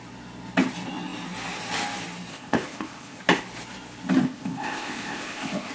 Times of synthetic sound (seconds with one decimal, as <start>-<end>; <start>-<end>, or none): 2.3-3.2; 4.2-5.7